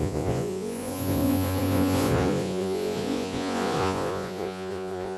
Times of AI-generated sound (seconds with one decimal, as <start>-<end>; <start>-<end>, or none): 0.0-5.2